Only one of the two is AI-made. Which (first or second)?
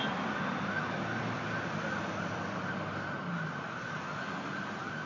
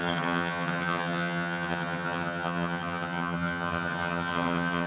second